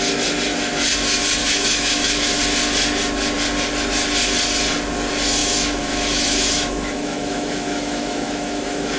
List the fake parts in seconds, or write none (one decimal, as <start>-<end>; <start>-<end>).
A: 1.4-2.4; 5.4-9.0